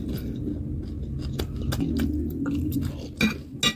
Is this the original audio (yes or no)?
yes